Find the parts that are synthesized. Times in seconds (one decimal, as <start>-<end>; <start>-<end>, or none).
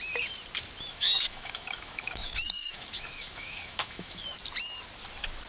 0.9-4.2